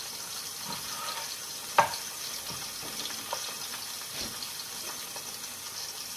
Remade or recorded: recorded